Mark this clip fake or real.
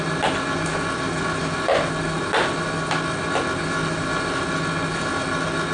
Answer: real